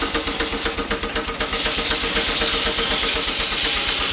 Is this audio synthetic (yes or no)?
no